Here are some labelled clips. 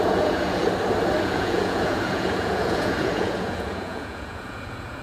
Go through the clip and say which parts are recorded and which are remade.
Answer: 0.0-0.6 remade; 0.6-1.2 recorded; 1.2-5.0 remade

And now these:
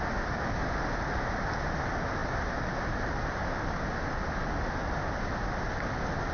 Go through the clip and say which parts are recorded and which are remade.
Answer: 0.0-6.3 recorded